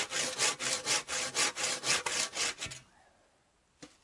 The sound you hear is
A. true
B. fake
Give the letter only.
A